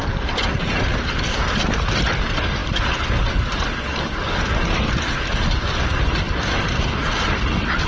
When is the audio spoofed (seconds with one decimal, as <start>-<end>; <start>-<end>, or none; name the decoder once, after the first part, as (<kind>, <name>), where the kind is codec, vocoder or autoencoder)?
none